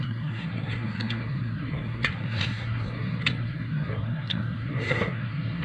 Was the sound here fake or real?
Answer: fake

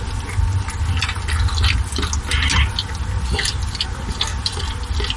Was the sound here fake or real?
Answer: real